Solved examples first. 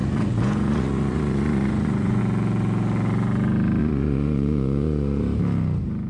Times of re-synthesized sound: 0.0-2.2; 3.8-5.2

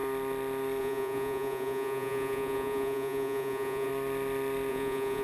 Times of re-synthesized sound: 0.8-3.9; 4.7-5.2

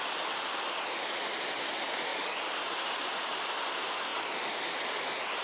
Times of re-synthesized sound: none

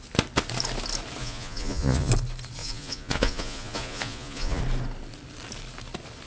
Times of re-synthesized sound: 1.2-2.1; 2.6-4.6